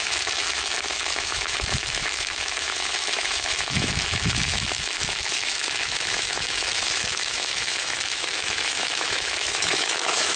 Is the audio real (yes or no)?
no